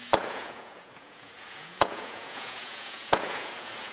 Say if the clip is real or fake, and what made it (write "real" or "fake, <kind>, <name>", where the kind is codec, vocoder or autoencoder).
fake, vocoder, Vocos